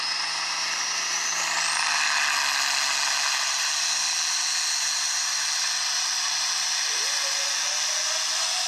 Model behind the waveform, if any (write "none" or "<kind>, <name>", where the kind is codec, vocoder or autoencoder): none